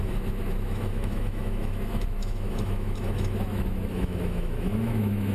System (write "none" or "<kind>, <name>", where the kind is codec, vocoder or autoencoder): autoencoder, DAC-VAE